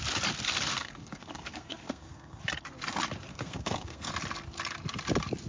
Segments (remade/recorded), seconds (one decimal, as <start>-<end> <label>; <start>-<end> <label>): 0.0-0.7 recorded; 0.7-2.4 remade; 2.4-3.3 recorded; 3.3-4.1 remade; 4.1-5.5 recorded